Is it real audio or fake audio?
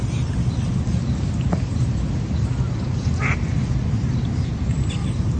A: real